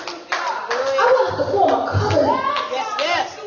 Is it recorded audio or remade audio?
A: recorded